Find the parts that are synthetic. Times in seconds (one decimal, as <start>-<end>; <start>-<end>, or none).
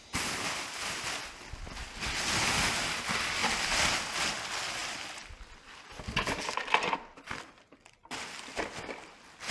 none